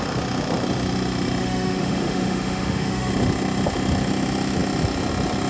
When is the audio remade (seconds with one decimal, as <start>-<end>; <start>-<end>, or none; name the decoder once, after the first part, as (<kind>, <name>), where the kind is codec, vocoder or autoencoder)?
1.4-3.1 (autoencoder, DAC-VAE)